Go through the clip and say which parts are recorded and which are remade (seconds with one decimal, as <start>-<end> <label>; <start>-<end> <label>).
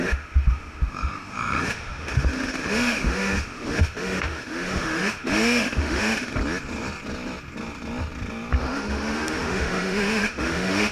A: 0.0-6.4 remade; 6.4-8.6 recorded; 8.6-10.9 remade